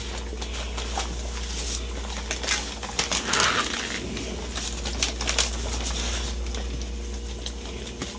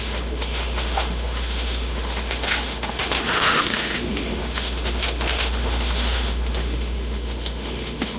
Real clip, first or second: first